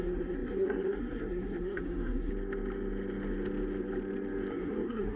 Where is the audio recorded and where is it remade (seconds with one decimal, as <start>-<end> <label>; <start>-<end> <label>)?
0.0-2.3 remade; 2.3-4.5 recorded; 4.5-5.2 remade